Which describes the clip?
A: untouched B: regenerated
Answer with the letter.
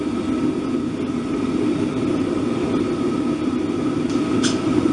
A